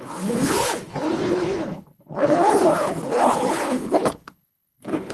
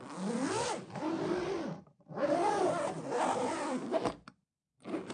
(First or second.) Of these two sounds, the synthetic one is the first